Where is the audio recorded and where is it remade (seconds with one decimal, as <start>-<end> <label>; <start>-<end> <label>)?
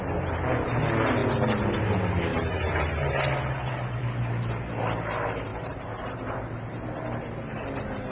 0.0-2.3 recorded; 2.3-2.8 remade; 2.8-5.5 recorded; 5.5-6.1 remade; 6.1-8.1 recorded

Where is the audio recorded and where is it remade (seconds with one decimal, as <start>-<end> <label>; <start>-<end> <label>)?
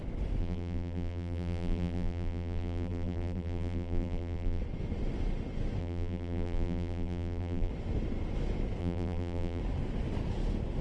0.0-0.4 recorded; 0.4-4.6 remade; 4.6-5.8 recorded; 5.8-7.7 remade; 7.7-8.8 recorded; 8.8-9.6 remade; 9.6-10.8 recorded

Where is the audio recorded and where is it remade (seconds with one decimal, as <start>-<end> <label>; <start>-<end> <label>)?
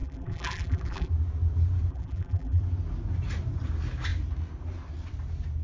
0.0-1.1 remade; 1.1-1.9 recorded; 1.9-2.6 remade; 2.6-5.6 recorded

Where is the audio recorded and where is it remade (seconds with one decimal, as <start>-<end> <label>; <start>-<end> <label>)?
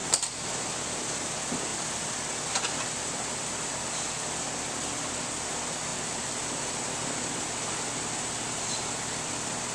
0.0-9.7 recorded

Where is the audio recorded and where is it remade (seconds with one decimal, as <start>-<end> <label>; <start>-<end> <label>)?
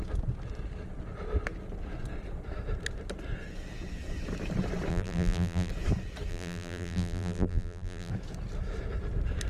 0.0-4.9 recorded; 4.9-5.7 remade; 5.7-6.3 recorded; 6.3-8.1 remade; 8.1-9.5 recorded